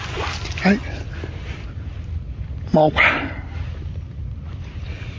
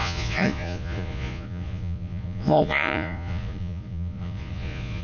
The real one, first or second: first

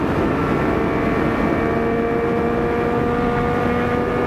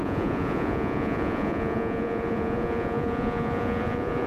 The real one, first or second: first